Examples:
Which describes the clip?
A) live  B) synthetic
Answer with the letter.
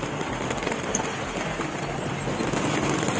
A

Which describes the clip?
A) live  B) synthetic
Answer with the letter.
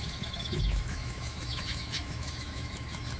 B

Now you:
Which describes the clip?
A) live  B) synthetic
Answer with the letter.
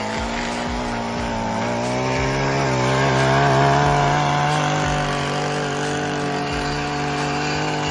A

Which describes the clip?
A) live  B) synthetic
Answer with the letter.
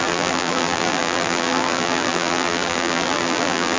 B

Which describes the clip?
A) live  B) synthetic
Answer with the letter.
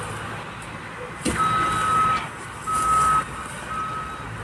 A